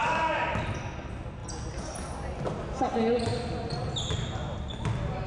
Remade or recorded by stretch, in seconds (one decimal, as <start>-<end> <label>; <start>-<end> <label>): 0.0-5.3 recorded

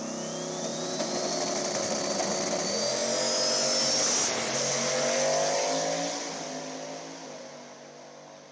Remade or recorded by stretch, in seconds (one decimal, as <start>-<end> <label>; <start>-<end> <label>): 0.0-0.7 recorded; 0.7-1.3 remade; 1.3-8.5 recorded

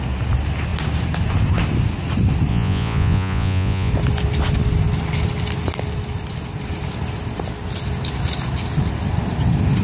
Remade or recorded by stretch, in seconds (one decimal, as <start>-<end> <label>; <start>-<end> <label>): 0.0-2.5 recorded; 2.5-3.9 remade; 3.9-9.8 recorded

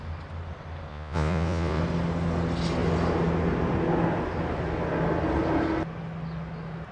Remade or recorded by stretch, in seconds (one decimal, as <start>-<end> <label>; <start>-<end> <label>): 0.0-0.9 recorded; 0.9-1.8 remade; 1.8-6.9 recorded

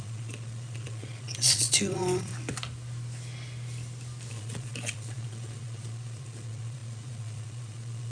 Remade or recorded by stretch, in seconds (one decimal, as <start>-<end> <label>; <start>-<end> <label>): 0.0-2.3 remade; 2.3-4.3 recorded; 4.3-8.1 remade

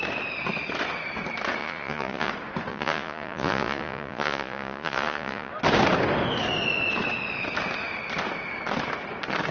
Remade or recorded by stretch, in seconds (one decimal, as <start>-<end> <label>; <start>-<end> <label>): 0.0-1.6 recorded; 1.6-2.3 remade; 2.3-2.7 recorded; 2.7-5.5 remade; 5.5-9.5 recorded

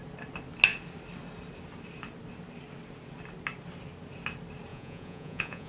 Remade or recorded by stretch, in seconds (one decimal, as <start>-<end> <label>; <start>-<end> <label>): 0.0-4.7 recorded; 4.7-5.7 remade